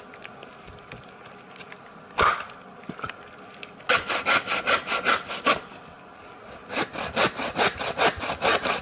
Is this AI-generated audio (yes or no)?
no